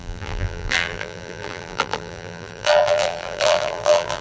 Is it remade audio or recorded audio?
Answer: remade